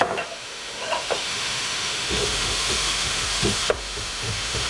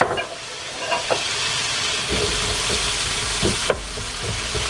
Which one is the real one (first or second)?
second